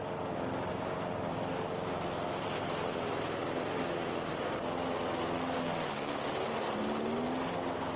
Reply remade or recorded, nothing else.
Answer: recorded